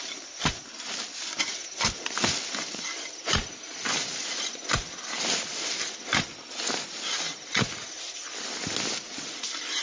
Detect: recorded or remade recorded